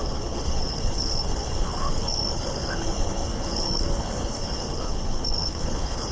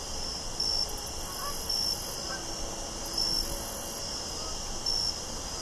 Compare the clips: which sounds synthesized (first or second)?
first